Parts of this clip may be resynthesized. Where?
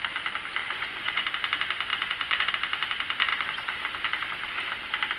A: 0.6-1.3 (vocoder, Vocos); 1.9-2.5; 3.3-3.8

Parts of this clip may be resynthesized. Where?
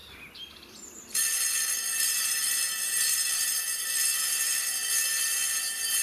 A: 0.0-3.6 (vocoder, BigVGAN v2)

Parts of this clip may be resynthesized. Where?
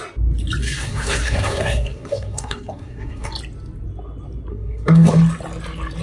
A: 0.6-3.3 (codec, SNAC); 4.5-5.1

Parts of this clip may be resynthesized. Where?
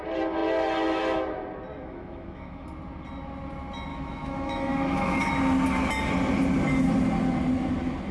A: 1.7-2.7 (autoencoder, DAC-VAE); 3.9-5.3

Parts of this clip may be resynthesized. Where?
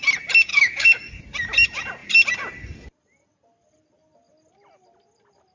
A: 0.5-1.2 (codec, DAC)